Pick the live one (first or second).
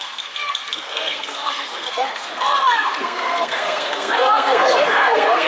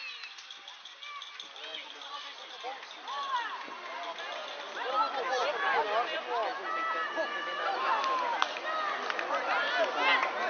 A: second